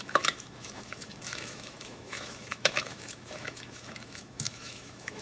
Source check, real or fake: fake